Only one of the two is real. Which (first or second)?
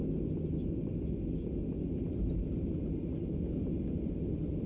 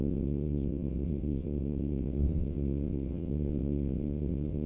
first